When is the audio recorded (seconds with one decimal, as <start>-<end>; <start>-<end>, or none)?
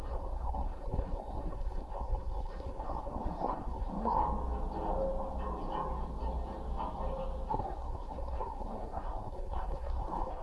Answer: 4.2-7.5